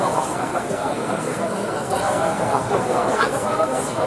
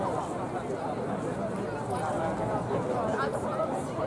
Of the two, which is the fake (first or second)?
first